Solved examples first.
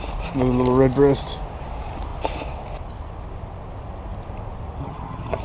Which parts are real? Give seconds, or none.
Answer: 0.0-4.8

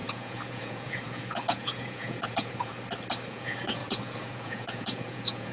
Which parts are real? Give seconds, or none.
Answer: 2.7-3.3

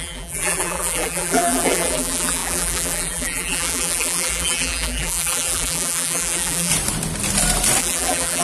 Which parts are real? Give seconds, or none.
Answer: 6.7-7.8

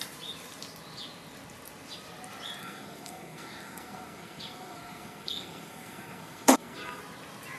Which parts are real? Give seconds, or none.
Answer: 0.0-2.6; 7.0-7.6